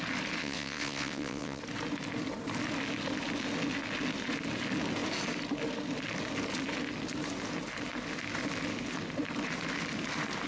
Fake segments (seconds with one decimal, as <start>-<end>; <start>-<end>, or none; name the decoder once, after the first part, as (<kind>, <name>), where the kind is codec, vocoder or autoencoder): 0.4-1.6 (vocoder, WaveNeXt)

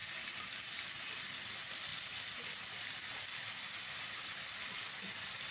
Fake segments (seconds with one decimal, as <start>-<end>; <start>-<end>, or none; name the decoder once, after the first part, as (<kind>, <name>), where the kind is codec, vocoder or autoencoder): 0.9-1.9 (vocoder, BigVGAN v2)

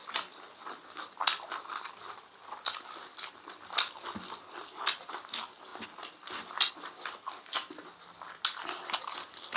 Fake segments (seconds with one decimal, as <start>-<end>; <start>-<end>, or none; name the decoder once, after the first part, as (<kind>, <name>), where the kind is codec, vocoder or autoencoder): none

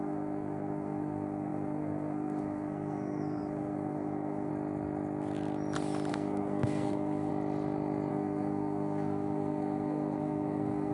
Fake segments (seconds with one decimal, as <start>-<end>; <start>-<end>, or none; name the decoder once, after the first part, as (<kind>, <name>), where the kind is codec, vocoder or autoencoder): 0.0-4.5 (codec, SNAC); 6.1-7.3; 8.1-10.9